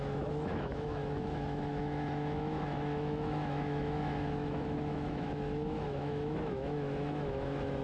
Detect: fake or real fake